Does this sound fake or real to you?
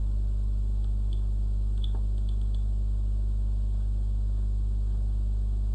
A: real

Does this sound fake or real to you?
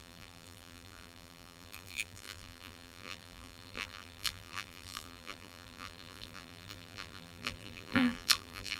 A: fake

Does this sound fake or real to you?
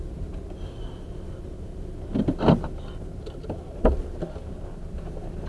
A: real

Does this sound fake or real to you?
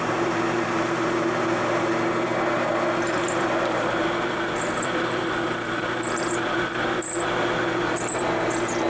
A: fake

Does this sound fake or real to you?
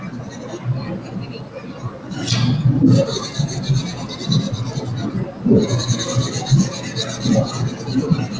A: real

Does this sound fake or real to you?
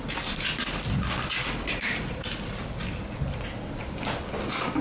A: real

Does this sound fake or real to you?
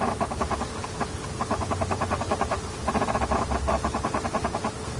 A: real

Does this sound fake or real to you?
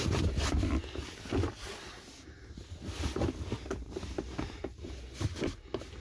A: real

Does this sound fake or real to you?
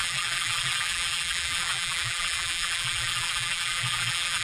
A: fake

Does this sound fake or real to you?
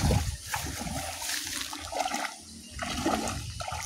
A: real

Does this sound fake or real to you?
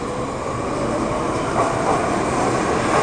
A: real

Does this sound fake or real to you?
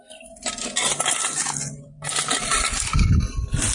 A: real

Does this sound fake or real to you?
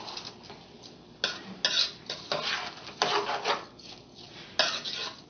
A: real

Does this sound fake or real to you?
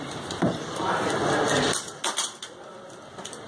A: real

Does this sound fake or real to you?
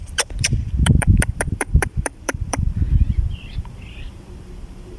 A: fake